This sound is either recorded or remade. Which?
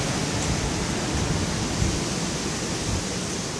recorded